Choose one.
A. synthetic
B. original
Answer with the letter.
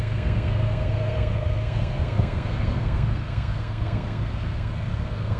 A